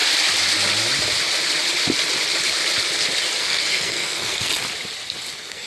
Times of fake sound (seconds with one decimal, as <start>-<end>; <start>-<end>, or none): 3.4-4.5; 5.3-5.7